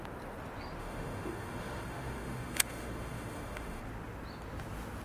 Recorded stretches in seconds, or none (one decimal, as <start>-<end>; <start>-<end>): 0.0-0.8; 3.8-5.0